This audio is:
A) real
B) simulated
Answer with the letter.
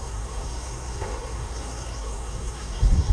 B